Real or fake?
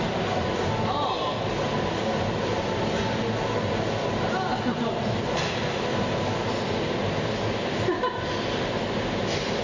real